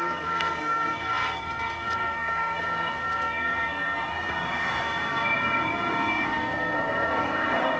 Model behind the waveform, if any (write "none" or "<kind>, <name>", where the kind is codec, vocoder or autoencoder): codec, SNAC